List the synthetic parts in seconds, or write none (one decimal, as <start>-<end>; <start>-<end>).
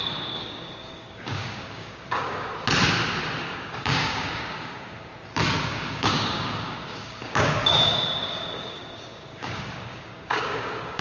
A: 0.0-2.5; 3.4-5.1; 5.6-11.0